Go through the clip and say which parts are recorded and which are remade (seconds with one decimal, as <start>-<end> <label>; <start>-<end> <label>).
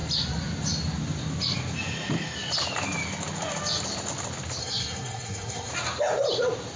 0.0-4.6 recorded; 4.6-5.7 remade; 5.7-6.8 recorded